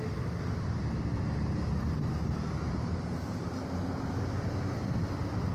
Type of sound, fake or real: real